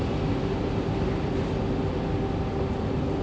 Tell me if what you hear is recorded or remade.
recorded